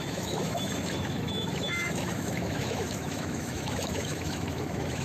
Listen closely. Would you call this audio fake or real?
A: fake